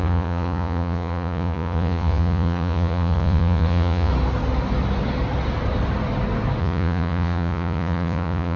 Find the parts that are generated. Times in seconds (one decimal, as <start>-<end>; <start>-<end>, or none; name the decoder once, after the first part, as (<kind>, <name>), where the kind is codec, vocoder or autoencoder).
0.0-4.1 (vocoder, Vocos); 6.6-8.6